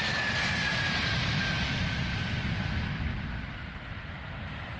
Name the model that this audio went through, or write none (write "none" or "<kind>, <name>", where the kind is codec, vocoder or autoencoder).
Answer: none